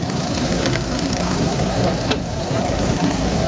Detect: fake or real fake